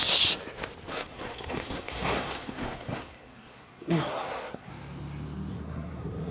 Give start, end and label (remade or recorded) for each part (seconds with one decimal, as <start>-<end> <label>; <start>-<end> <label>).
0.0-0.9 recorded; 0.9-4.7 remade; 4.7-5.5 recorded; 5.5-6.3 remade